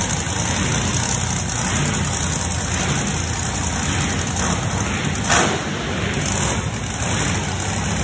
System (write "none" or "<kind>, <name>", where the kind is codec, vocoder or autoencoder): none